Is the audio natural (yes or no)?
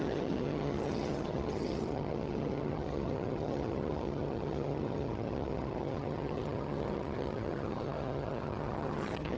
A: no